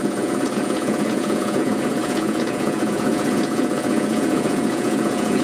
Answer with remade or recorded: remade